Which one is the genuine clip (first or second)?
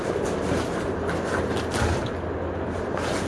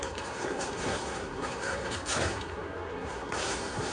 first